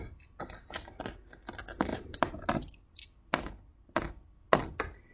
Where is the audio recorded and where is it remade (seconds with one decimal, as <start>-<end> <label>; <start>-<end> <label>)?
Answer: 0.0-1.9 recorded; 1.9-2.8 remade; 2.8-5.1 recorded